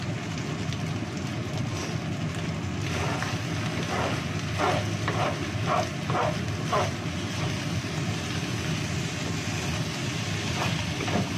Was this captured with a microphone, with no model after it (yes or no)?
yes